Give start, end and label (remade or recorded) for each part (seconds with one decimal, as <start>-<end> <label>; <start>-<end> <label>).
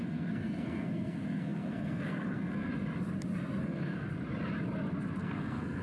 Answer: 0.0-2.7 remade; 2.7-3.6 recorded; 3.6-4.1 remade; 4.1-5.2 recorded; 5.2-5.8 remade